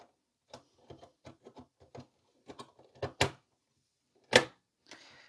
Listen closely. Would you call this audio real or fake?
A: real